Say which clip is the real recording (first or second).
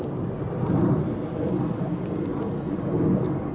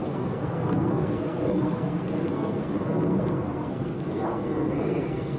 first